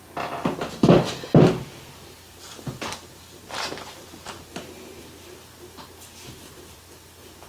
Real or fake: real